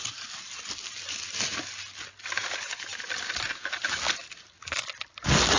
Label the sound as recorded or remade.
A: recorded